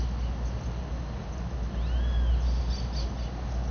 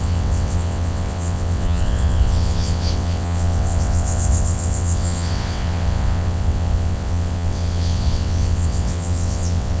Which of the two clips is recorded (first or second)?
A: first